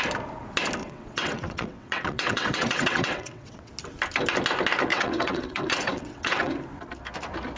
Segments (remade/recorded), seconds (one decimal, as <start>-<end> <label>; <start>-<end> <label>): 0.0-0.8 recorded; 0.8-3.7 remade; 3.7-4.9 recorded; 4.9-6.5 remade; 6.5-7.6 recorded